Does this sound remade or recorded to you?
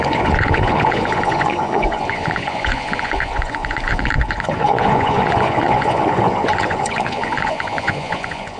remade